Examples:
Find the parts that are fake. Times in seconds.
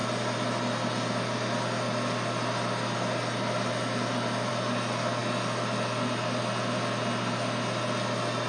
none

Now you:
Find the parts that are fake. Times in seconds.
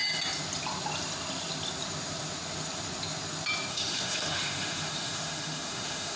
3.7-6.2 (autoencoder, DAC-VAE)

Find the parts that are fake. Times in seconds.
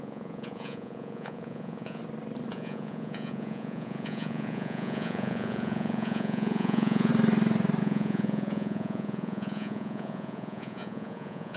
0.0-2.0 (vocoder, Vocos); 2.5-7.1; 7.8-11.6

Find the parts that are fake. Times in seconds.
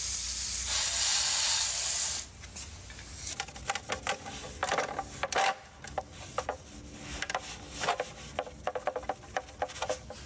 1.1-1.6 (vocoder, BigVGAN v2); 4.6-5.4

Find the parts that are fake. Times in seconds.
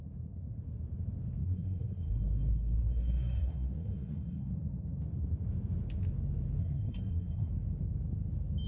1.4-4.5 (codec, SNAC); 6.6-7.5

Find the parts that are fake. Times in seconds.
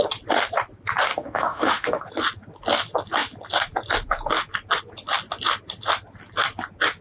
1.1-2.0 (autoencoder, DAC-VAE)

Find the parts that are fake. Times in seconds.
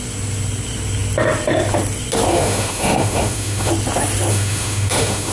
2.3-3.7 (autoencoder, DAC-VAE); 4.3-5.3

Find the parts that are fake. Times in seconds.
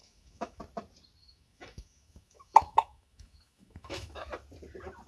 0.0-0.6 (autoencoder, DAC-VAE); 1.2-4.3